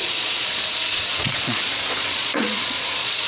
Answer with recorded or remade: remade